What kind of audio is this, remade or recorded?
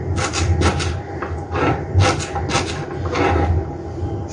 recorded